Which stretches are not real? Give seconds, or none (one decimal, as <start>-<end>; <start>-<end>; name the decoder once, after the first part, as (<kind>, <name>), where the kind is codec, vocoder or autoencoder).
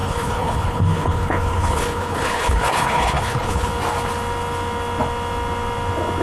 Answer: 0.0-3.7 (codec, HILCodec)